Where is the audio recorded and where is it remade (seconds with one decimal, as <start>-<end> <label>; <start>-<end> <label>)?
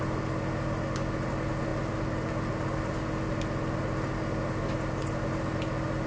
0.0-6.1 recorded